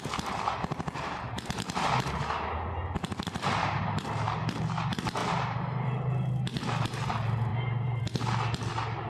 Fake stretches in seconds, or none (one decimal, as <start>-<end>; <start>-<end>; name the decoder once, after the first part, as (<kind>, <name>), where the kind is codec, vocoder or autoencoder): 5.2-5.9 (vocoder, BigVGAN v2); 7.5-8.0